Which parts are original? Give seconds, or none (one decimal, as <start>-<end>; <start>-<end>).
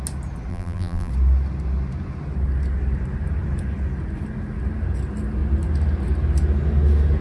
0.0-0.5; 1.1-7.2